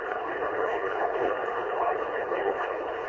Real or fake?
fake